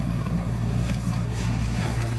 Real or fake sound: fake